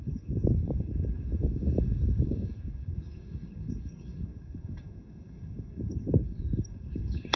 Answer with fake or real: fake